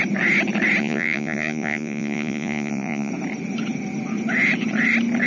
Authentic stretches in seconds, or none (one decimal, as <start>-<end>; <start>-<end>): 0.0-0.8; 3.1-5.3